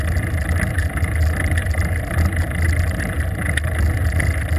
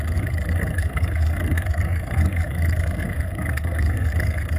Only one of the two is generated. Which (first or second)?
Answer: second